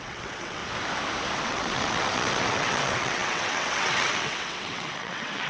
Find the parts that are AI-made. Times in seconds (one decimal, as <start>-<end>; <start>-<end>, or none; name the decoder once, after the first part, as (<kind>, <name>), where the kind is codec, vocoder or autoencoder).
0.0-0.6 (vocoder, WaveNeXt); 1.4-5.5